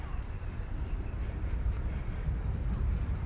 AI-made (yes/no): no